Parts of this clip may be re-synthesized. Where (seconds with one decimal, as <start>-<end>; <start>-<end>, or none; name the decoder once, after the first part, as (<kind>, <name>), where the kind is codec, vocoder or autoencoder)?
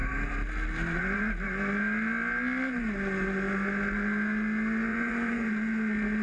4.9-5.5 (vocoder, Vocos)